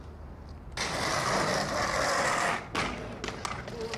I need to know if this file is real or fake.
real